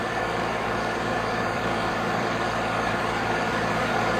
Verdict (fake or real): fake